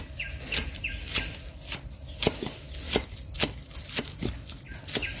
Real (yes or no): yes